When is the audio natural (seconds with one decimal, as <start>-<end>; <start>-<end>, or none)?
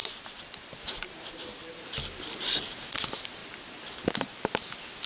2.0-3.4; 4.3-5.1